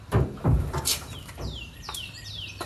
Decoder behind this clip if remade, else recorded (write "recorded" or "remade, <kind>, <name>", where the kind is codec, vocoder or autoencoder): remade, vocoder, BigVGAN v2